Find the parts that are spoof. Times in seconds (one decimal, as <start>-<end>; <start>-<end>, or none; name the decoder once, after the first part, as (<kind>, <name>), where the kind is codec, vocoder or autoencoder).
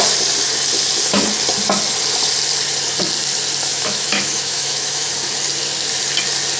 3.7-5.1 (autoencoder, DAC-VAE)